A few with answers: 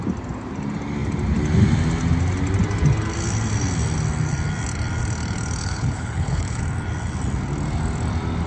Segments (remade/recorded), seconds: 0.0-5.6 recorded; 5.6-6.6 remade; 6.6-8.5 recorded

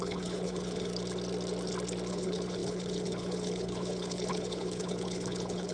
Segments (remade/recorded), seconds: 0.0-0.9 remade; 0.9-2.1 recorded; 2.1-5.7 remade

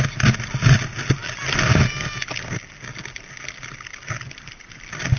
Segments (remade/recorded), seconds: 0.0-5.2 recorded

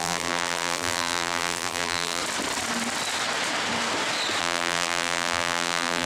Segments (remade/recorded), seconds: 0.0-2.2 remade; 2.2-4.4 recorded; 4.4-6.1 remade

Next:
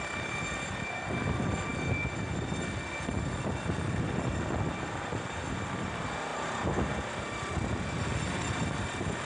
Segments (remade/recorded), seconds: 0.0-9.2 recorded

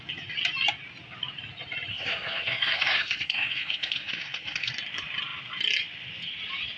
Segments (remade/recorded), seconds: 0.0-1.9 recorded; 1.9-4.7 remade; 4.7-6.8 recorded

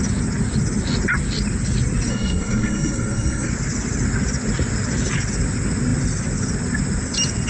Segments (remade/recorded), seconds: 0.0-2.1 recorded; 2.1-3.5 remade; 3.5-7.5 recorded

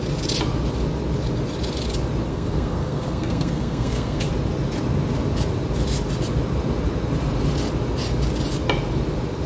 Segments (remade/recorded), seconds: 0.0-2.3 recorded; 2.3-4.3 remade; 4.3-9.5 recorded